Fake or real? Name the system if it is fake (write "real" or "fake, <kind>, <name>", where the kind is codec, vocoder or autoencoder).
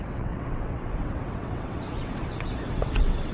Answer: fake, vocoder, WaveNeXt